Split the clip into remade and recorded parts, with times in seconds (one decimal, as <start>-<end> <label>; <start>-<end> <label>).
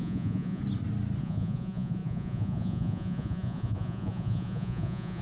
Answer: 0.0-0.6 remade; 0.6-1.2 recorded; 1.2-5.2 remade